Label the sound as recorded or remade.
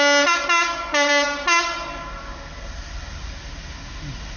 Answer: recorded